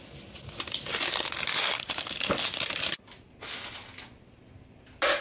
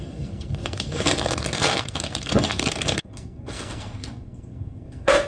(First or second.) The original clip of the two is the first